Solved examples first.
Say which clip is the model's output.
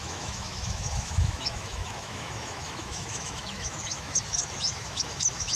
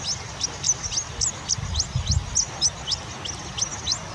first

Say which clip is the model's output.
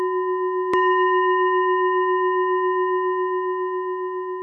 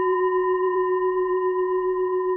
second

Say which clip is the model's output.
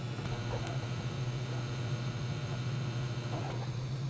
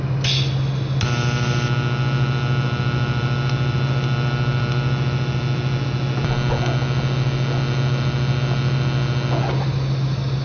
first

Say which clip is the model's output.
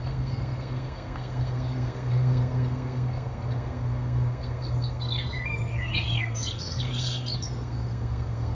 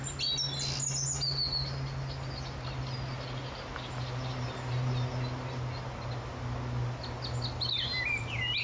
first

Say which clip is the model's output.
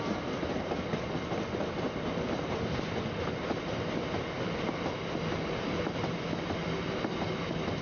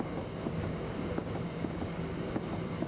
second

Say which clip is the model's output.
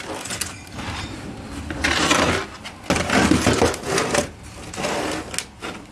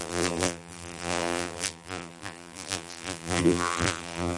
second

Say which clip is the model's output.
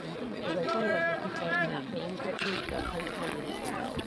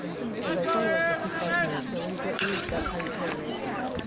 first